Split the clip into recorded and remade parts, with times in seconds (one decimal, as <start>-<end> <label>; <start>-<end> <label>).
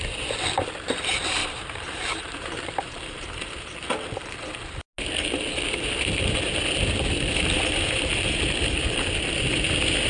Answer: 0.0-1.4 recorded; 1.4-3.5 remade; 3.5-10.1 recorded